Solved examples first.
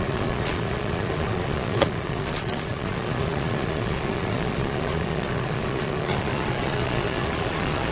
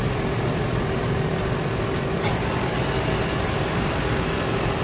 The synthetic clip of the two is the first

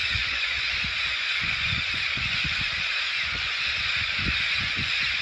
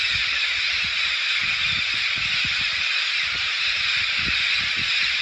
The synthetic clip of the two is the first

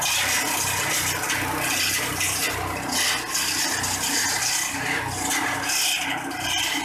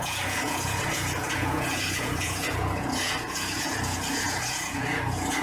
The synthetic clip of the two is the second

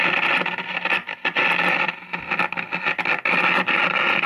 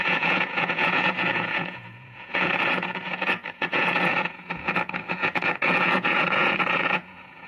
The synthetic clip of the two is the second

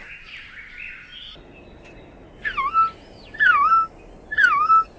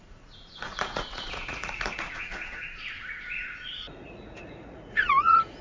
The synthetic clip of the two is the second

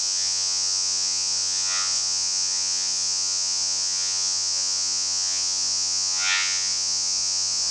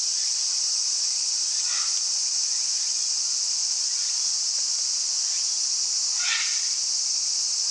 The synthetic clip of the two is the first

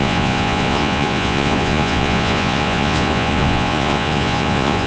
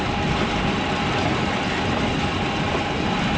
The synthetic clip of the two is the first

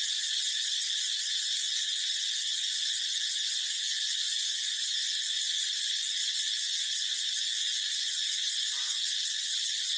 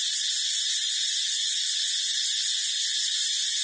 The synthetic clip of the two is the first